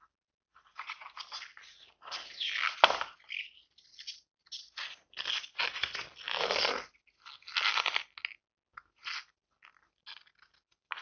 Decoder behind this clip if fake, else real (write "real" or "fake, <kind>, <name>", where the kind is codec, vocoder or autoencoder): real